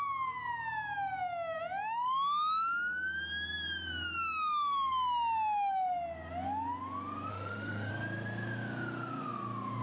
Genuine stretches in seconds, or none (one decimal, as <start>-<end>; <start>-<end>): 0.0-7.3; 7.9-9.8